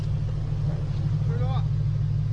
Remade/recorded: recorded